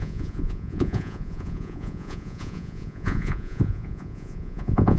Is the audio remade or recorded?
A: remade